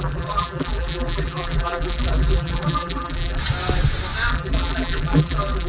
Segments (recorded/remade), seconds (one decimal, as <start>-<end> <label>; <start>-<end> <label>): 0.0-3.4 remade; 3.4-4.3 recorded; 4.3-5.7 remade